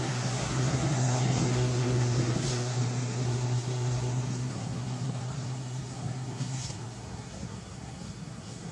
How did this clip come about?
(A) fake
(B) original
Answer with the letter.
A